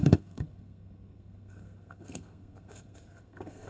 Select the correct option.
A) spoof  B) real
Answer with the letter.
A